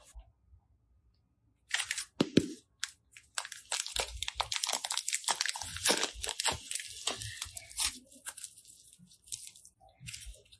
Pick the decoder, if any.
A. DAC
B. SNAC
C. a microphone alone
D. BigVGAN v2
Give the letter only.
C